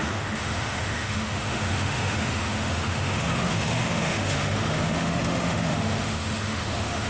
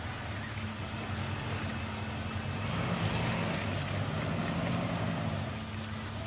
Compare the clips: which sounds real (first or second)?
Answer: second